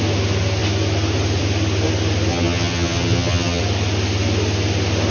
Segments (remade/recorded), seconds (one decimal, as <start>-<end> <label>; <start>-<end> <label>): 0.0-2.3 recorded; 2.3-3.6 remade; 3.6-5.1 recorded